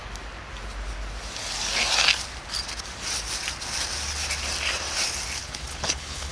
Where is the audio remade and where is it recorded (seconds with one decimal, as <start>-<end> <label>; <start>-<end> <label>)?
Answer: 0.0-5.4 recorded; 5.4-6.3 remade

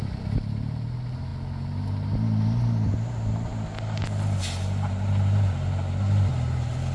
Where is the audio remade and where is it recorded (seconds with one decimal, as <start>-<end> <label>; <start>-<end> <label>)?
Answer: 0.0-6.9 recorded

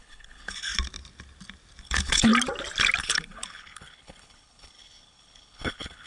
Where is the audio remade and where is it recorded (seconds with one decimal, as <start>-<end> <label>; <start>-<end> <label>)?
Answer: 0.0-0.7 remade; 0.7-1.8 recorded; 1.8-2.3 remade; 2.3-3.0 recorded; 3.0-6.1 remade

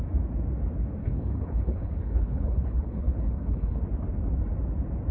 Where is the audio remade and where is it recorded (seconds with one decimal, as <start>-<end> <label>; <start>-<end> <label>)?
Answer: 0.0-1.0 recorded; 1.0-3.8 remade; 3.8-5.1 recorded

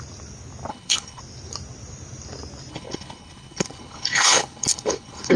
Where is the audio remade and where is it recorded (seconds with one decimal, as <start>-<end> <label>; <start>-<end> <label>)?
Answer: 0.0-0.7 recorded; 0.7-1.2 remade; 1.2-2.7 recorded; 2.7-5.4 remade

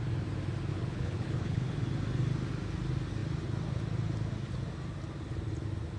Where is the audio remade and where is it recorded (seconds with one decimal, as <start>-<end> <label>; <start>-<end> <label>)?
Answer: 0.0-0.7 recorded; 0.7-1.8 remade; 1.8-6.0 recorded